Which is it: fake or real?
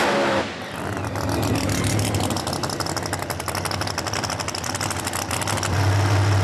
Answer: real